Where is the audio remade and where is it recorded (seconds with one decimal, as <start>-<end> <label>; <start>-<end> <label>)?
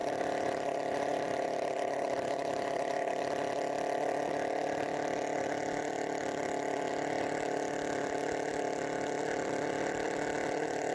0.0-3.1 remade; 3.1-10.9 recorded